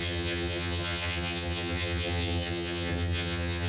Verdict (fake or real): fake